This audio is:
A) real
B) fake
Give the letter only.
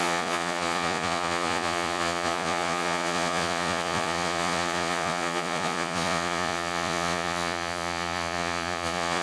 B